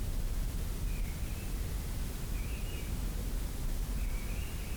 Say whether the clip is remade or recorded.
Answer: recorded